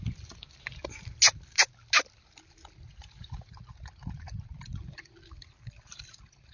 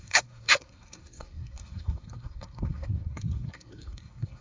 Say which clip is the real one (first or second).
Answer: first